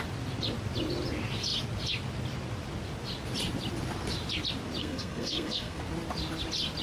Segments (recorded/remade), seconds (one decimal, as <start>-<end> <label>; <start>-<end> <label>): 0.0-4.8 recorded; 4.8-5.8 remade; 5.8-6.8 recorded